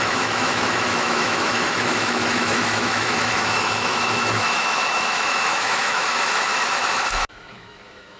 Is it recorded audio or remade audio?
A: remade